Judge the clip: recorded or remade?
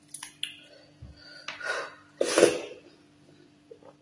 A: recorded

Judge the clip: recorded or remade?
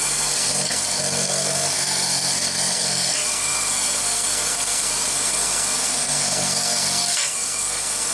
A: remade